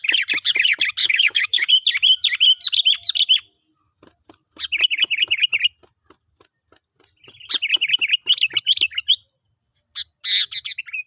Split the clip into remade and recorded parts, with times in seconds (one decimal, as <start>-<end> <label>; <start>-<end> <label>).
0.0-1.0 recorded; 1.0-1.7 remade; 1.7-11.1 recorded